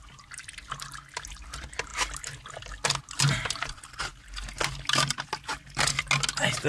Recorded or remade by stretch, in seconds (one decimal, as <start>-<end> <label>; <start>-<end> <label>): 0.0-6.7 recorded